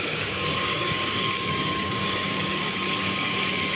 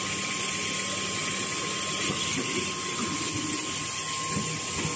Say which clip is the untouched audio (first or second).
second